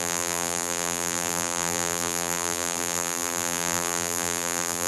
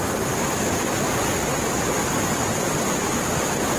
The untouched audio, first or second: second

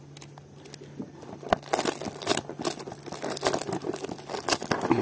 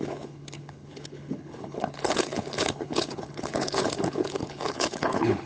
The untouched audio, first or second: first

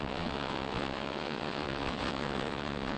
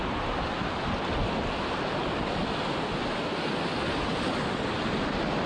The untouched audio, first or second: second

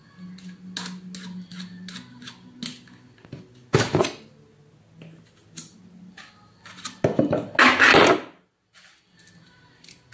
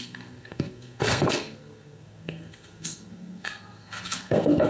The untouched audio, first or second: first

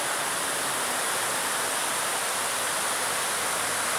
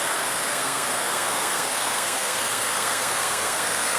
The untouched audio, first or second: first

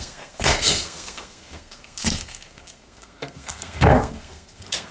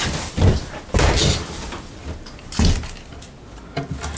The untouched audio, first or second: second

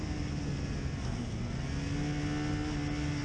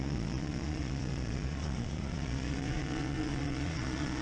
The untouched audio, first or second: first